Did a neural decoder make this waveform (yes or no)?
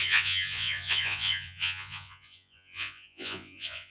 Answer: yes